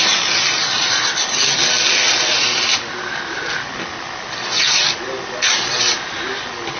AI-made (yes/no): no